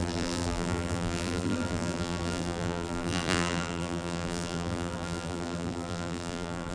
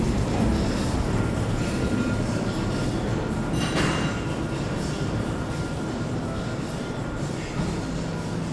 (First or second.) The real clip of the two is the second